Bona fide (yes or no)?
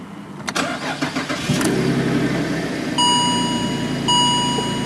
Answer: yes